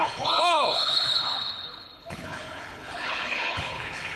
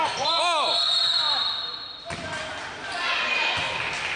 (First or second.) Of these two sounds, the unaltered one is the second